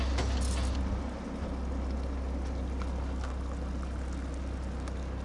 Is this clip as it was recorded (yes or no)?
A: yes